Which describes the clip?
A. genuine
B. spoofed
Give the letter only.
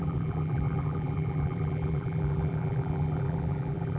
B